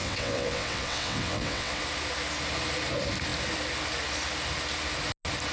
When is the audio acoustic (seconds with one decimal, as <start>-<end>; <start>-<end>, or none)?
1.8-5.5